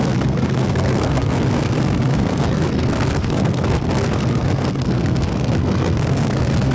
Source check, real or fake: fake